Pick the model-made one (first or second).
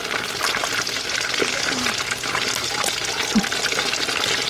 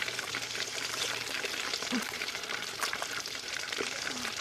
second